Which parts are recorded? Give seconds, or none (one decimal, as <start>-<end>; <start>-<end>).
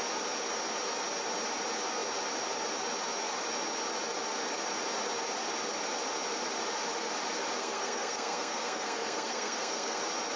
0.0-7.6; 10.0-10.4